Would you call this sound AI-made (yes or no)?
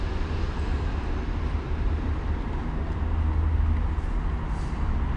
no